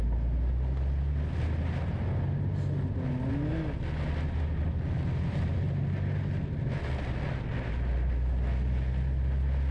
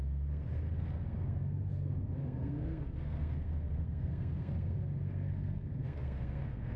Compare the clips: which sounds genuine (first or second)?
first